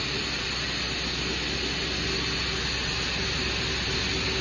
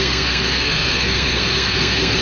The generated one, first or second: second